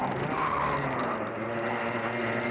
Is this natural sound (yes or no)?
yes